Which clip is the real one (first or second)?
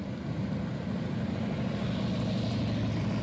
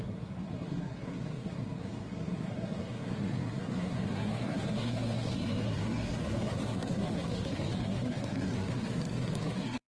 first